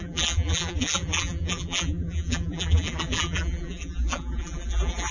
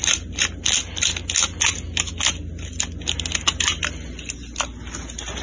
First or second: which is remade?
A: first